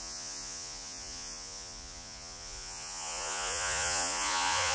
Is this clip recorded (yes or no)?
no